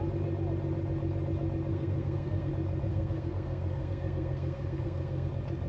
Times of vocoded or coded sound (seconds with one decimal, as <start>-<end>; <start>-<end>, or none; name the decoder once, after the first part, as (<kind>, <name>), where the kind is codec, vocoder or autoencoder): 1.7-2.5 (codec, SNAC); 2.9-5.3